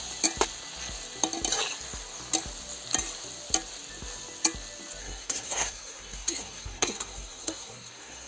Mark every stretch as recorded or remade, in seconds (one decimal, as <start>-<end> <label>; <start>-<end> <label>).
0.0-5.0 recorded; 5.0-8.3 remade